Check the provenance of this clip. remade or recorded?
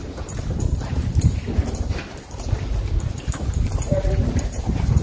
remade